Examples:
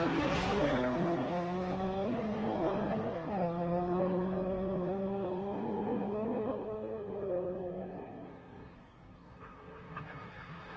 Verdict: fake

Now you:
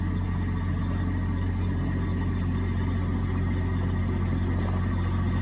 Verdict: real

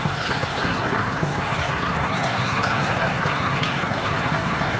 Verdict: fake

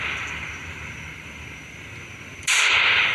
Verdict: real